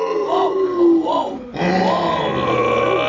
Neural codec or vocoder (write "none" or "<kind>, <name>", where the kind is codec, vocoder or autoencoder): none